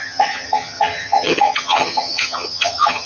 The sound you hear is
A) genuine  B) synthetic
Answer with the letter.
B